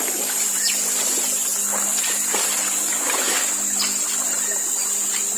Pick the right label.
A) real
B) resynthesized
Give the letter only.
A